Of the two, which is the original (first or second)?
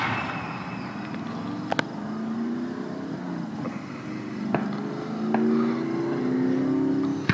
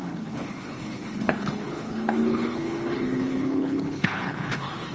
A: first